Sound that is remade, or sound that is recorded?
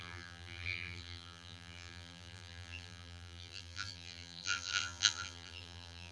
remade